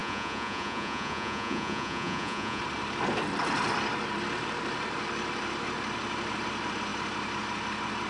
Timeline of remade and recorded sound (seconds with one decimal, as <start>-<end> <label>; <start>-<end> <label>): 0.0-2.6 remade; 2.6-8.1 recorded